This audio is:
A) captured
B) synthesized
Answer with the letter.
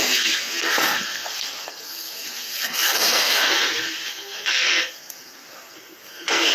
B